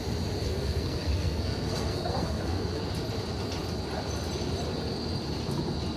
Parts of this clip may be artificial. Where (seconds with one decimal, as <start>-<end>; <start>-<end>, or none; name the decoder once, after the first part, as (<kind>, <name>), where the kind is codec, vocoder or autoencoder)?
0.4-2.8 (codec, SNAC)